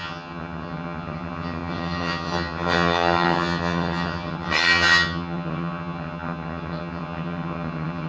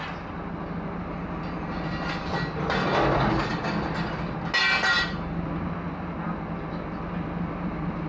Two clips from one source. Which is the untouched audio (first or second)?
second